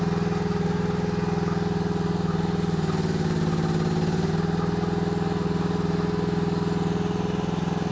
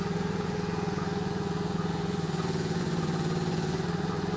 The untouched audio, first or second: first